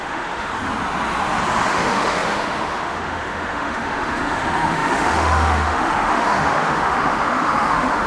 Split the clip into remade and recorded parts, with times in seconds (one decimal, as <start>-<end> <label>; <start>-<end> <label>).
0.0-0.5 remade; 0.5-1.7 recorded; 1.7-8.1 remade